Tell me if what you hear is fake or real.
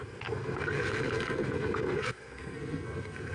fake